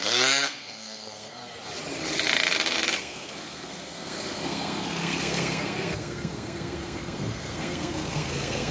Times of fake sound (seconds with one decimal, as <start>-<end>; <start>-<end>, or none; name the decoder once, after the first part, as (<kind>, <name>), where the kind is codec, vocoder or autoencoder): 0.0-1.4 (codec, SNAC); 3.0-8.7